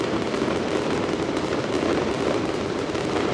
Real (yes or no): yes